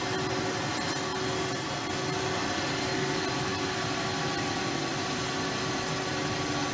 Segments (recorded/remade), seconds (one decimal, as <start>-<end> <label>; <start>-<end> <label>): 0.0-6.7 recorded